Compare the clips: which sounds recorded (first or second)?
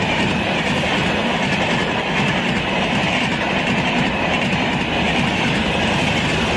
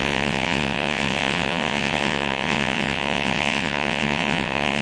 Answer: first